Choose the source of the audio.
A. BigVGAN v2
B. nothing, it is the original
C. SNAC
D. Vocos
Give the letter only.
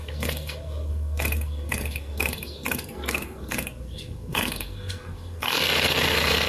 C